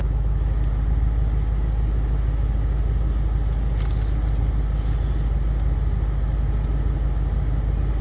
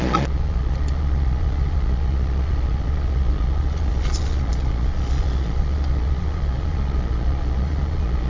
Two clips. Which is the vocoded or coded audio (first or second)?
second